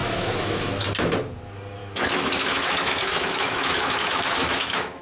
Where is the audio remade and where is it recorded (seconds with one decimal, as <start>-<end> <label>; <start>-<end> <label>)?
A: 0.0-0.7 remade; 0.7-1.8 recorded; 1.8-5.0 remade